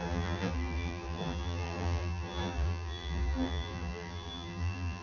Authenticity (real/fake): fake